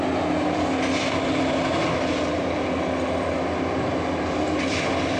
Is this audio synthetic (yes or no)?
no